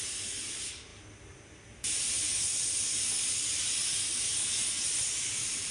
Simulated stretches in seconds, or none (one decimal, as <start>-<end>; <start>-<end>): none